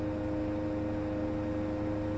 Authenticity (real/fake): real